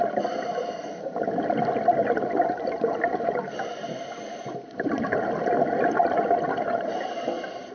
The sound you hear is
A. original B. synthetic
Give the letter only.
A